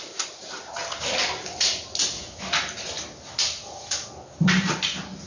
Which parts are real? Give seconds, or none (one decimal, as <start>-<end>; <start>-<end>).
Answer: 0.0-5.3